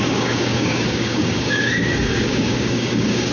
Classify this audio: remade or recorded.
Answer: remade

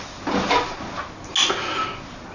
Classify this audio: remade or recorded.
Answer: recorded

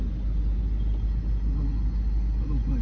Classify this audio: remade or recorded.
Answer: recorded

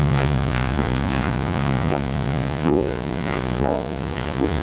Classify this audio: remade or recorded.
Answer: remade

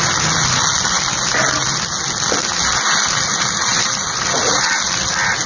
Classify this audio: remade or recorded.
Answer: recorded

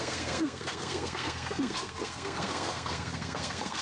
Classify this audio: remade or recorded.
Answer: remade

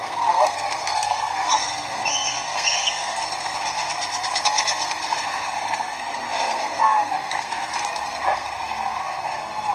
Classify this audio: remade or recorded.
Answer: remade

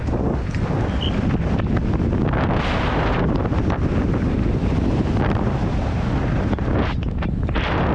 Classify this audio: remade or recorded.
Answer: recorded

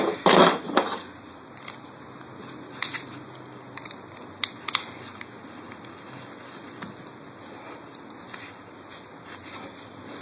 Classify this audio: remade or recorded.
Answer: recorded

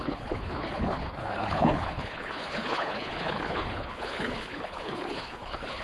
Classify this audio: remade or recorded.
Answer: remade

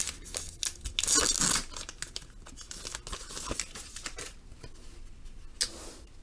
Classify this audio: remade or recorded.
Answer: recorded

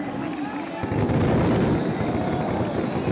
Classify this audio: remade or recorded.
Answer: recorded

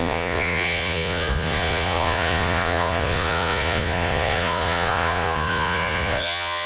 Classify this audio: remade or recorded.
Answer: remade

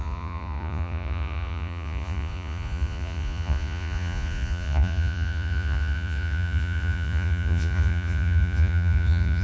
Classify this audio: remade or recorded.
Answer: remade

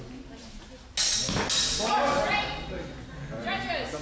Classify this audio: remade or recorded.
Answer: recorded